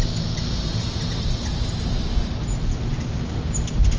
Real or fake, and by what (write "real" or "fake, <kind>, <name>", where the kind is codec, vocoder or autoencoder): real